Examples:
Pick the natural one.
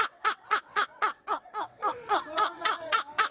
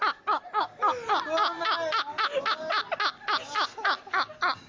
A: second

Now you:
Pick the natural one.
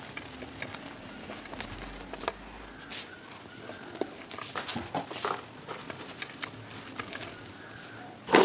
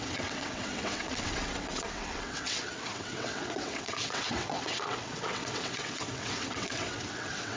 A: first